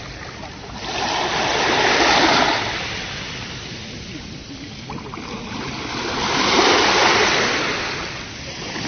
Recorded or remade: recorded